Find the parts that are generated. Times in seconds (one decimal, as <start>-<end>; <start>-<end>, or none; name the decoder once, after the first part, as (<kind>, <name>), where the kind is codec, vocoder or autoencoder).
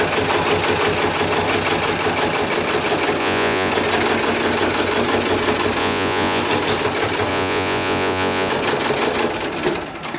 3.2-3.7 (vocoder, Vocos); 5.8-6.4; 7.3-8.5